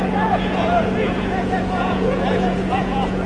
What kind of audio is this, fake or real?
fake